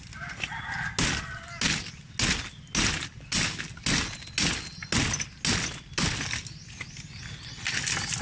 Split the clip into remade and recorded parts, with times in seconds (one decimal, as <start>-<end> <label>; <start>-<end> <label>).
0.0-8.2 recorded